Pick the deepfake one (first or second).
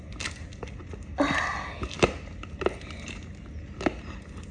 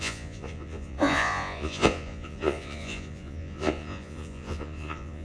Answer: second